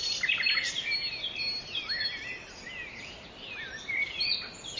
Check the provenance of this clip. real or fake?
real